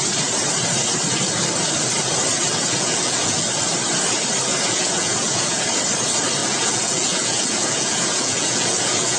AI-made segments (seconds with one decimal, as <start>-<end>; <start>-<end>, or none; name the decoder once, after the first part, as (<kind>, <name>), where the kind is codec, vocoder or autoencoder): 2.6-3.5 (vocoder, Vocos); 4.5-5.6; 6.4-9.2